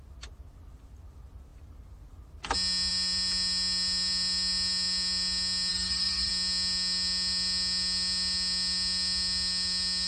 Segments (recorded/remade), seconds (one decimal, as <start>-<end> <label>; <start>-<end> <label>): 0.0-5.7 recorded; 5.7-6.3 remade; 6.3-10.1 recorded

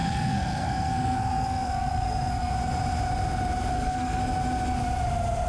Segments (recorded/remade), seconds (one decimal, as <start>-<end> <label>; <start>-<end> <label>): 0.0-2.5 remade; 2.5-3.7 recorded; 3.7-4.2 remade; 4.2-5.5 recorded

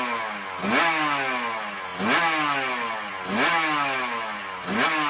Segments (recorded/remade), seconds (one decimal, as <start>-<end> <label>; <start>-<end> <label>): 0.0-5.1 recorded

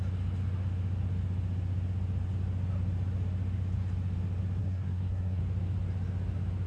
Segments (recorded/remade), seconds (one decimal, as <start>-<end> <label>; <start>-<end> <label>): 0.0-4.6 recorded; 4.6-5.4 remade; 5.4-6.7 recorded

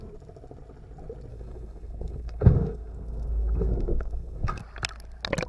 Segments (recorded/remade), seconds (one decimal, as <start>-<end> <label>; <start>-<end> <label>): 0.0-1.3 recorded; 1.3-4.6 remade; 4.6-5.5 recorded

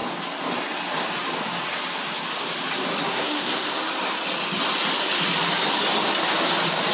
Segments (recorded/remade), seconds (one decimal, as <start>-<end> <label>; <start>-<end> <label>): 0.0-3.1 recorded; 3.1-3.8 remade; 3.8-6.9 recorded

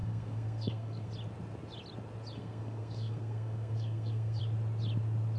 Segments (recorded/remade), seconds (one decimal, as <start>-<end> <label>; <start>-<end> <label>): 0.0-1.1 remade; 1.1-2.4 recorded; 2.4-4.4 remade; 4.4-5.4 recorded

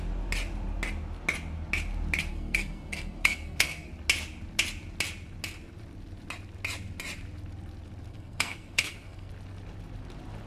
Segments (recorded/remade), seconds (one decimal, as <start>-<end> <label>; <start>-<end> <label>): 0.0-2.3 recorded; 2.3-3.9 remade; 3.9-8.1 recorded; 8.1-9.3 remade; 9.3-10.5 recorded